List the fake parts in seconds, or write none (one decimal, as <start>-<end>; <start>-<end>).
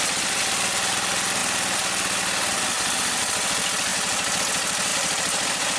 3.9-4.4; 4.9-5.8